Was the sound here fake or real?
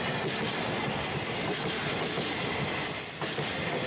real